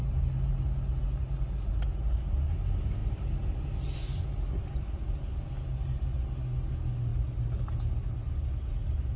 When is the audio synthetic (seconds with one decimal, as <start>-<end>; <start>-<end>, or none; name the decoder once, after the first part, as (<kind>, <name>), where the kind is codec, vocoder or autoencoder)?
none

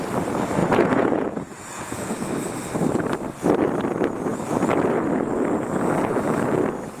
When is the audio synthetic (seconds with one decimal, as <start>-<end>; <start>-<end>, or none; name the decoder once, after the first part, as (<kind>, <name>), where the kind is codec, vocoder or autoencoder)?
0.6-2.3 (vocoder, Vocos)

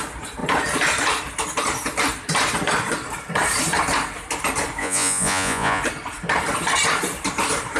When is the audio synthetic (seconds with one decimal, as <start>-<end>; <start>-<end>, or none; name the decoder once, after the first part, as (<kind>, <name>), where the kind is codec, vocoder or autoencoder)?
4.8-5.8 (vocoder, Vocos)

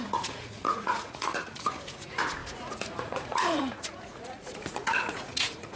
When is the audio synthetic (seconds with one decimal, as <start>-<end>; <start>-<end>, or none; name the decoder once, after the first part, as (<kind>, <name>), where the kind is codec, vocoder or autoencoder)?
0.0-5.8 (vocoder, Vocos)

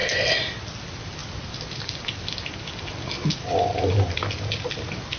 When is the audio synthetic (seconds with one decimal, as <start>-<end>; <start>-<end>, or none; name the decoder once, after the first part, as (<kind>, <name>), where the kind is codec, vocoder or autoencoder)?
none

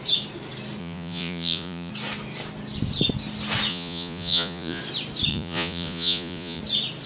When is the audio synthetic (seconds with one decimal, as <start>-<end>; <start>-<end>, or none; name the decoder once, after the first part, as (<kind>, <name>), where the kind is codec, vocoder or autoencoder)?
0.8-1.9 (vocoder, Vocos); 3.7-4.8; 5.3-6.6

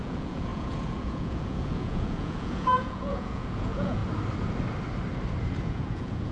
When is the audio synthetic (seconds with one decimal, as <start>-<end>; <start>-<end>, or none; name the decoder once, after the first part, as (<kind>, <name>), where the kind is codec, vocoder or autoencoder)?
0.0-4.0 (vocoder, Vocos); 5.6-6.3